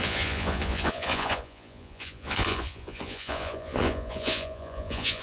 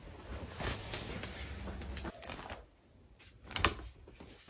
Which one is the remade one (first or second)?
first